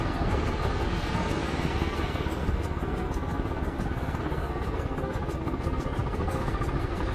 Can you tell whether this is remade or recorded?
remade